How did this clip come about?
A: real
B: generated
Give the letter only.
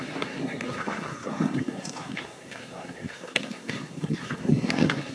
B